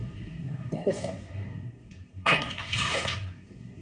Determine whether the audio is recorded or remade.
remade